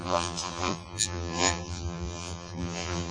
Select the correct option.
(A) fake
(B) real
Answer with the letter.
A